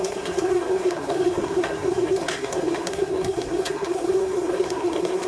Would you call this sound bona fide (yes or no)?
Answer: no